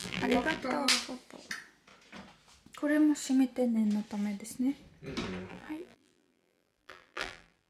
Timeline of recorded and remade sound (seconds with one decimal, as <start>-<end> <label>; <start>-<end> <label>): 0.0-0.6 remade; 0.6-5.5 recorded; 5.5-7.7 remade